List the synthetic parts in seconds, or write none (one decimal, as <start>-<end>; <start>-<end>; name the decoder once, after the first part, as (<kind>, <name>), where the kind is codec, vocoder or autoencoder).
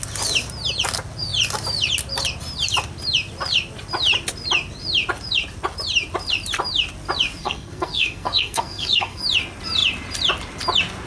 7.4-9.2 (codec, SNAC)